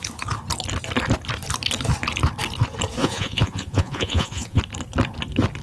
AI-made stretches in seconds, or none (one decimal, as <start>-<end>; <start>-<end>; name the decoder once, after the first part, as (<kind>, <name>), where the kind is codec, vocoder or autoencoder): 3.0-4.6 (vocoder, Vocos)